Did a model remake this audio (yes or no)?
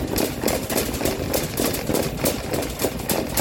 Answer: no